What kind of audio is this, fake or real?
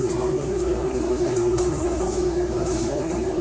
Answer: fake